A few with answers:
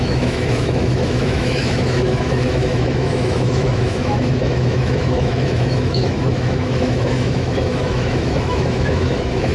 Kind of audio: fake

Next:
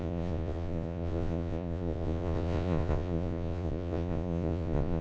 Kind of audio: fake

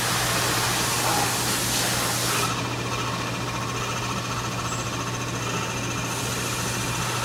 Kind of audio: real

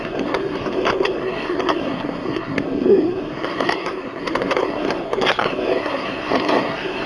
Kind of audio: fake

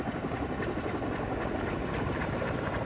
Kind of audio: fake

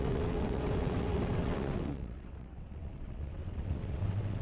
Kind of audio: fake